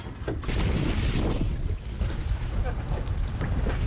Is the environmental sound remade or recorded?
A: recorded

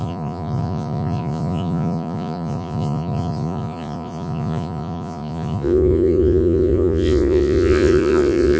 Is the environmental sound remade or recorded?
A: remade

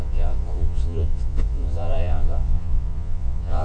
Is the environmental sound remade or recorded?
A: remade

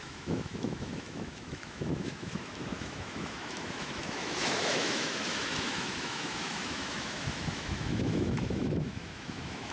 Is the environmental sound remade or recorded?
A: remade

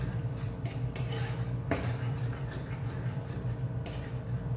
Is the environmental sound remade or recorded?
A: remade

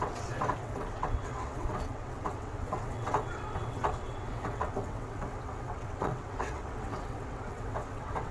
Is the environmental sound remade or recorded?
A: remade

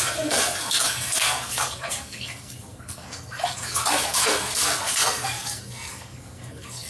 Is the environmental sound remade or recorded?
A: remade